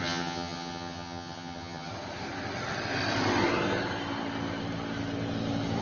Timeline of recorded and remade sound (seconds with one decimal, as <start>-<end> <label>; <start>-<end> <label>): 0.0-1.9 remade; 1.9-5.8 recorded